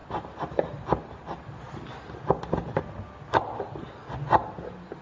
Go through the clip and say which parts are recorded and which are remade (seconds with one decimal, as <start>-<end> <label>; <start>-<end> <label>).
0.0-5.0 recorded